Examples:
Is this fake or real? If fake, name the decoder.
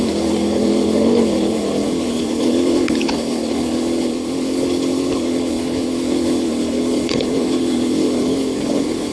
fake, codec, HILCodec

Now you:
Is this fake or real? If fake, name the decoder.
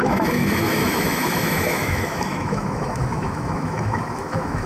fake, autoencoder, DAC-VAE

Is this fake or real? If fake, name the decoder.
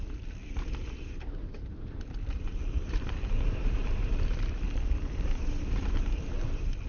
fake, vocoder, BigVGAN v2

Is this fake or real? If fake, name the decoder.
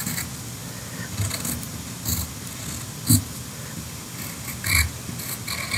real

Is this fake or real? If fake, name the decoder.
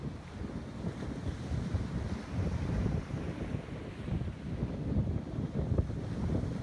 fake, vocoder, BigVGAN v2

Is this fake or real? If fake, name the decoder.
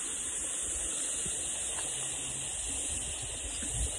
real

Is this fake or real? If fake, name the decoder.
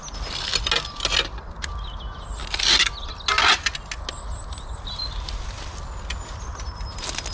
real